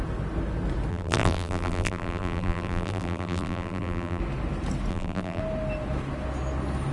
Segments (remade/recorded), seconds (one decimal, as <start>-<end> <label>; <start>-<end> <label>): 0.0-0.9 recorded; 0.9-4.2 remade; 4.2-4.9 recorded; 4.9-5.4 remade; 5.4-6.9 recorded